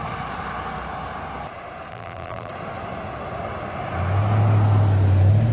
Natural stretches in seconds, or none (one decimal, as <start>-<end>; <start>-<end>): 0.0-1.9; 2.5-5.5